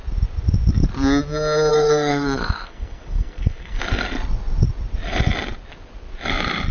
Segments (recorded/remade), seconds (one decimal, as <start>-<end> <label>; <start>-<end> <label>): 0.0-1.7 recorded; 1.7-3.9 remade; 3.9-6.7 recorded